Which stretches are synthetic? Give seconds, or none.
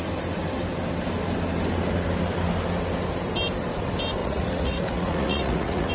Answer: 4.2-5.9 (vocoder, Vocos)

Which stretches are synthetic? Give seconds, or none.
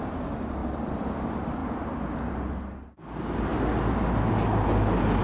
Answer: 0.6-1.1 (vocoder, BigVGAN v2)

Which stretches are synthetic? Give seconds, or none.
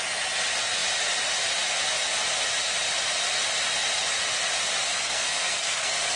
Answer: 4.9-6.2 (codec, SNAC)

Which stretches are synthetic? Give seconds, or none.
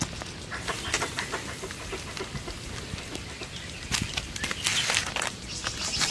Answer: none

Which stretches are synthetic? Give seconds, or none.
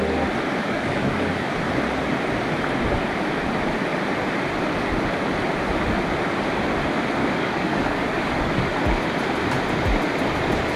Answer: 0.6-1.5 (codec, DAC); 7.2-8.7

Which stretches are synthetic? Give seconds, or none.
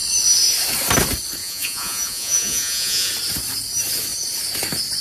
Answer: 1.4-3.1 (vocoder, Vocos)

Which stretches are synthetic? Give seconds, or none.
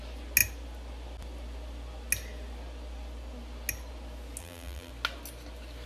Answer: 4.4-4.9 (vocoder, BigVGAN v2)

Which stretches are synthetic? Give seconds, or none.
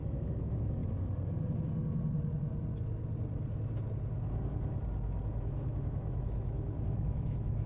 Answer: 0.0-0.8 (autoencoder, DAC-VAE); 5.4-7.7